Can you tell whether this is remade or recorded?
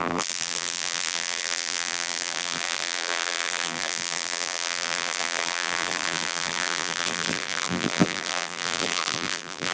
remade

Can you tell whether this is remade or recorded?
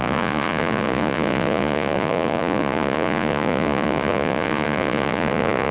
remade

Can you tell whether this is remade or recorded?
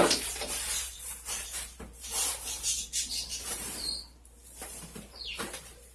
remade